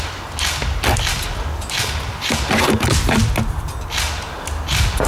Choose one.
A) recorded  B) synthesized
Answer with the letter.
A